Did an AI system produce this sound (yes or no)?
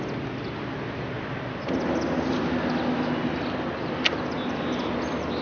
no